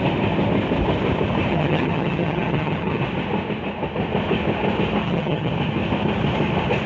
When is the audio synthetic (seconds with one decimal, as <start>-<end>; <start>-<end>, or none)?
1.5-3.0; 5.0-5.5